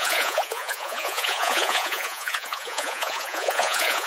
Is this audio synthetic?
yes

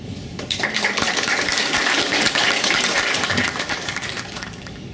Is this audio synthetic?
yes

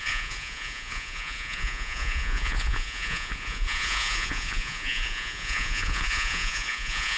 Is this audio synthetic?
yes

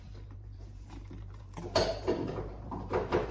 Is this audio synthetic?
yes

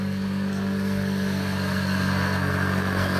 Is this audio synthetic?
yes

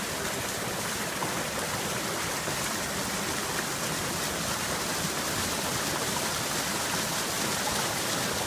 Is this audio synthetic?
no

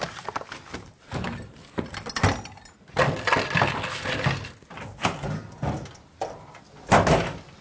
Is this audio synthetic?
no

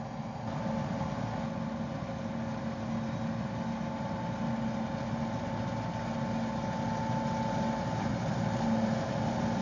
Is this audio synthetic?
no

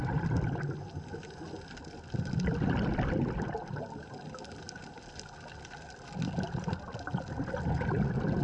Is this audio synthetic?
no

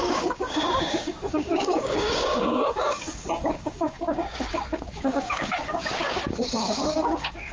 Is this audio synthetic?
yes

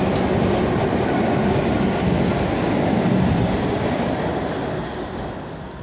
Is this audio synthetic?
no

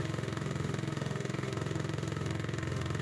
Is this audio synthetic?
yes